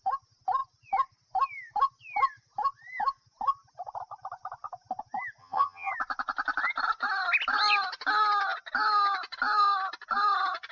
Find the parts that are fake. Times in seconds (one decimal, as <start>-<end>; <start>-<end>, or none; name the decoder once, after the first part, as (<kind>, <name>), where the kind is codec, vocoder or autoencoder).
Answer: 5.4-5.9 (vocoder, HiFi-GAN)